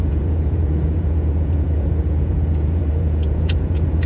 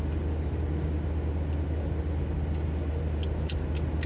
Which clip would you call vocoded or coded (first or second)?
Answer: first